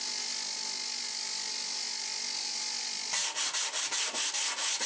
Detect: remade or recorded recorded